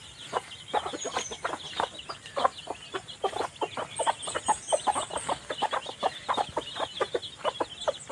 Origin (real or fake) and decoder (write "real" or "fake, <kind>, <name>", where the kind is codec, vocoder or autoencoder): real